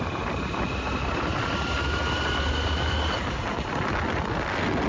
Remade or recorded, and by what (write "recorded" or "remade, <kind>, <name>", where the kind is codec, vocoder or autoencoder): recorded